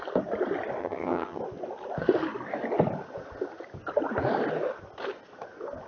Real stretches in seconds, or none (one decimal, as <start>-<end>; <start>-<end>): 0.0-0.8; 1.4-5.9